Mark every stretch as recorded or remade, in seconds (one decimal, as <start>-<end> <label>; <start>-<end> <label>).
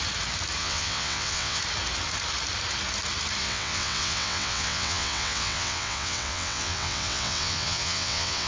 0.0-0.6 recorded; 0.6-1.6 remade; 1.6-3.4 recorded; 3.4-8.5 remade